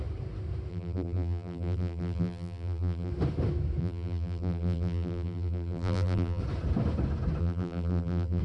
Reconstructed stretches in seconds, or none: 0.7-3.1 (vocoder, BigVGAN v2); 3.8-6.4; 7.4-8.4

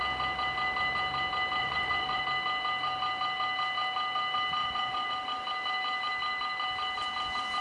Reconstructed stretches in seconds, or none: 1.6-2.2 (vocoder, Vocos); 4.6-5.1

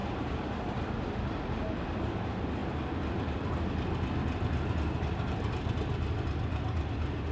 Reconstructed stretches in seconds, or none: 0.0-1.8 (vocoder, BigVGAN v2)